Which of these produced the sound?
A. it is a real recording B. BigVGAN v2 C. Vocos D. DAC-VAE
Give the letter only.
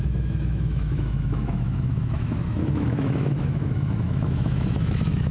D